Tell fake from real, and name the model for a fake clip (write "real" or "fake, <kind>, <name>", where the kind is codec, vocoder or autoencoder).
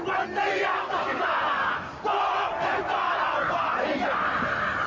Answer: real